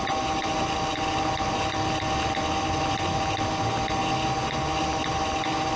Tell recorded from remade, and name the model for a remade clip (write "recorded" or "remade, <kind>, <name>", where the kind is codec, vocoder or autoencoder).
recorded